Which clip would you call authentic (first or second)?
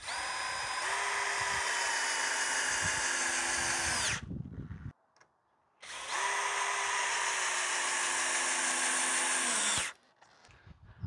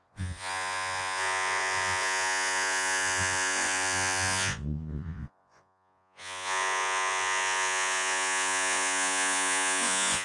first